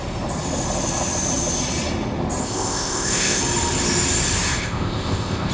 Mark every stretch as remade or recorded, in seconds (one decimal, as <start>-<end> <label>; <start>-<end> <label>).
0.0-2.4 recorded; 2.4-3.4 remade; 3.4-4.6 recorded; 4.6-5.5 remade